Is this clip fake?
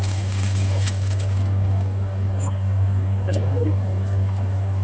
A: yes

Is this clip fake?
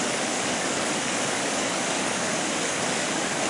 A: yes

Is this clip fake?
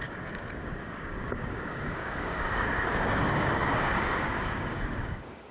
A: yes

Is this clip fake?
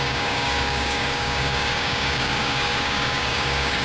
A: yes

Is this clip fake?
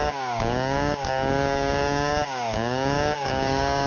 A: yes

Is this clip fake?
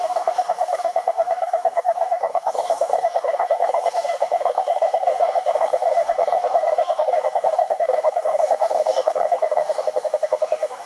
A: yes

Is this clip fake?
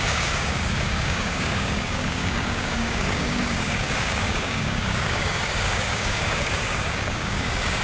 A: yes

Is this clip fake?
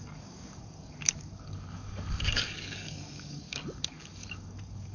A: yes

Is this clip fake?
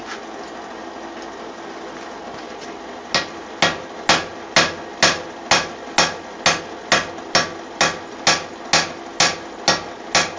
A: no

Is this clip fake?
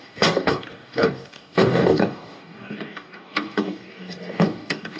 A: yes